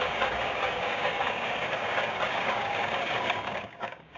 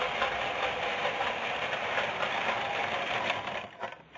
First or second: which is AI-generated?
first